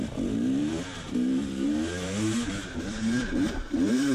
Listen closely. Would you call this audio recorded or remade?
remade